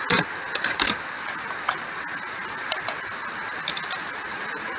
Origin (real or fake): real